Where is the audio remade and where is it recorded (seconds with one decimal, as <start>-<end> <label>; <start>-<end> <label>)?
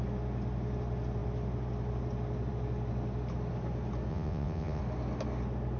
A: 0.0-4.1 recorded; 4.1-4.8 remade; 4.8-5.8 recorded